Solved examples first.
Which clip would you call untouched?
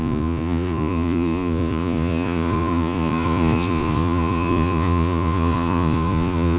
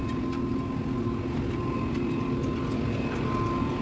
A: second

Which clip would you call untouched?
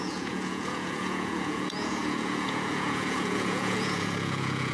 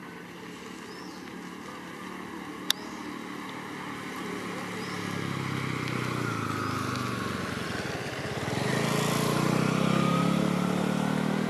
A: second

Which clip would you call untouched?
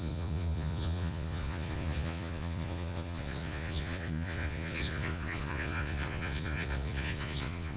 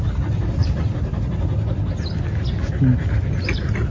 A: second